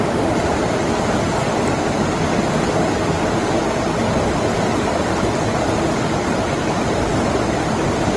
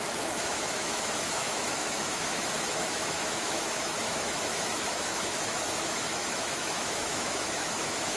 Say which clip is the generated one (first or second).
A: second